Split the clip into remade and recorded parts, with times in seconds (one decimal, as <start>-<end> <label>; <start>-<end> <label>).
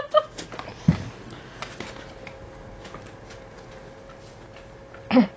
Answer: 0.0-5.4 recorded